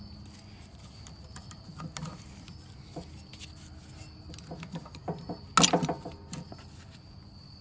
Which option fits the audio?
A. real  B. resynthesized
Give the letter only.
A